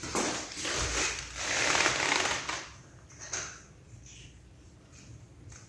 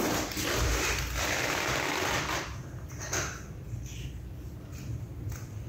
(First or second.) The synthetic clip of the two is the first